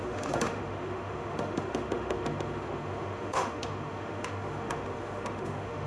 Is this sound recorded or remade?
remade